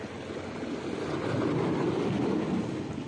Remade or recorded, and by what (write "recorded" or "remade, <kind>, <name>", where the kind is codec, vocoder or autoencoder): recorded